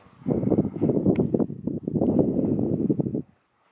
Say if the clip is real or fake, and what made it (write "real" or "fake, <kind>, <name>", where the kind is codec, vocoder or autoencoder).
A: real